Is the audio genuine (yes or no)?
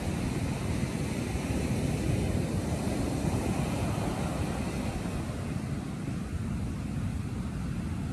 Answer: yes